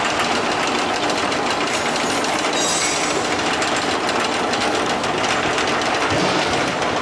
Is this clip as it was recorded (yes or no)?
yes